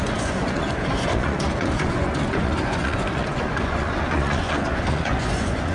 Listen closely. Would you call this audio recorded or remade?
remade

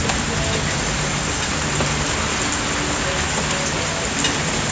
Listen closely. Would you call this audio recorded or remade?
recorded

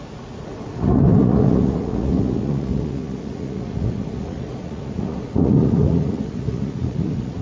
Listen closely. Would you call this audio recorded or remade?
remade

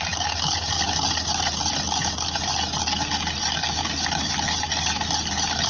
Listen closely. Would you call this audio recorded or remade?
recorded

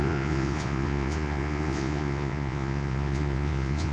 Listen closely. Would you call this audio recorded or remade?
remade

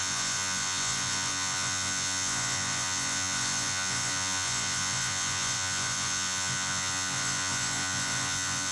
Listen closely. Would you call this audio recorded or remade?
remade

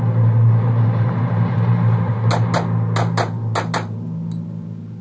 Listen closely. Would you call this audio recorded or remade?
recorded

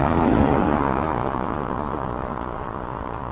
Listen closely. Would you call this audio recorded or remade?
remade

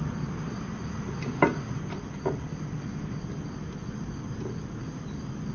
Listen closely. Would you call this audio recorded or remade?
recorded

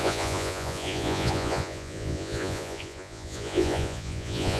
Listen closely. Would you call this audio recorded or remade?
remade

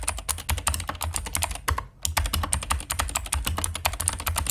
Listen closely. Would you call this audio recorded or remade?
recorded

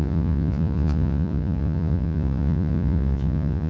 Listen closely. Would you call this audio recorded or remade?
remade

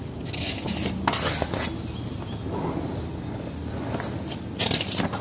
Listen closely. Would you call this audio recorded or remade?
recorded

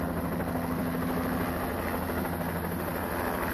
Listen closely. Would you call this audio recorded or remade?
recorded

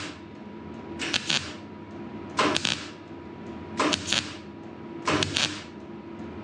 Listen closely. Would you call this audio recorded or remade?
recorded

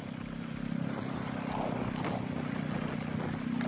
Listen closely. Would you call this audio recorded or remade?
recorded